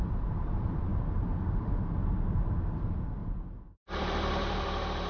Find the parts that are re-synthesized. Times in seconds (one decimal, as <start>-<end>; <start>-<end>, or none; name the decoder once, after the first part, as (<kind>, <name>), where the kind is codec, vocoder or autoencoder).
0.0-0.9 (vocoder, BigVGAN v2); 2.8-3.2; 4.0-5.1